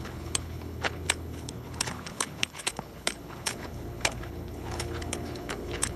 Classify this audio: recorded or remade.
remade